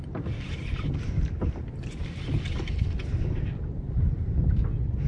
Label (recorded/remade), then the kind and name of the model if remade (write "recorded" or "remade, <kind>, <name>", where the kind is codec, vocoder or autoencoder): recorded